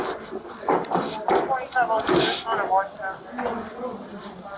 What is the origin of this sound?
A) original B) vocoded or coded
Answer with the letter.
A